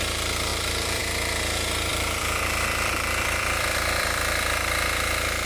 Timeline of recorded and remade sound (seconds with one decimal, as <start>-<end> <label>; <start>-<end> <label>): 0.0-0.5 recorded; 0.5-1.0 remade; 1.0-1.9 recorded; 1.9-5.5 remade